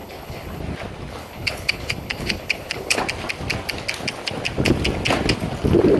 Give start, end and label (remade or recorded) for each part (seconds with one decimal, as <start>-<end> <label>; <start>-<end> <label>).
0.0-0.6 remade; 0.6-1.2 recorded; 1.2-3.0 remade; 3.0-6.0 recorded